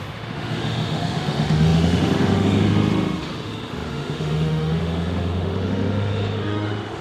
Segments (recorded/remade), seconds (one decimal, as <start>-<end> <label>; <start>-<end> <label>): 0.0-7.0 remade